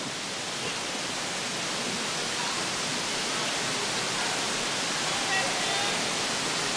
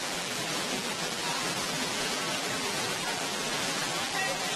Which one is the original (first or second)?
first